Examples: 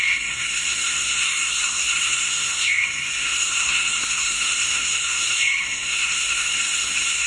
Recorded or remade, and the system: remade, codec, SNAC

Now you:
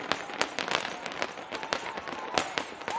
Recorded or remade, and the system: recorded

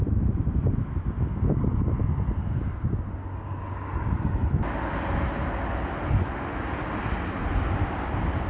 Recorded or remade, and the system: recorded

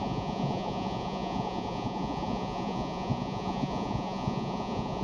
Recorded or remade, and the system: remade, vocoder, Vocos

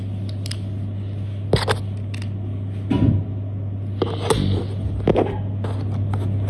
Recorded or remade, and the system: recorded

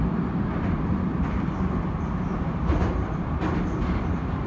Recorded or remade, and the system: recorded